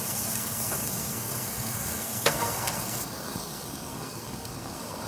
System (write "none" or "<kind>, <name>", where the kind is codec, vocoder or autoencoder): codec, SNAC